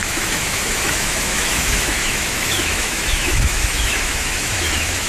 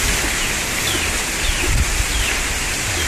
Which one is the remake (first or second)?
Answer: first